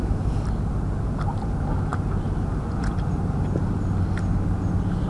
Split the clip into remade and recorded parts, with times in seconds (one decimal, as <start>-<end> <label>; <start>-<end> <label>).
0.0-5.1 recorded